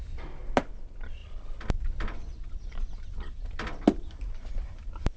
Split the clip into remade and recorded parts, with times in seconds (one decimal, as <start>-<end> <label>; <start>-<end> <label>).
0.0-5.2 recorded